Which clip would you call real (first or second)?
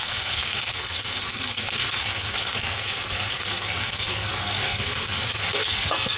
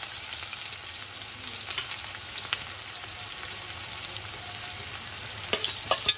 second